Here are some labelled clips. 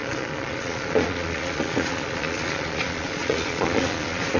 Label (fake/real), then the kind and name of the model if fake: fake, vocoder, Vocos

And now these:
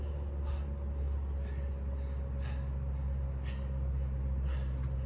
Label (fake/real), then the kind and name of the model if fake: real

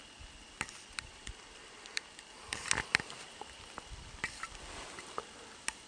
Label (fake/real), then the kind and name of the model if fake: real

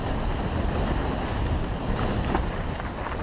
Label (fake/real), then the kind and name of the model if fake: real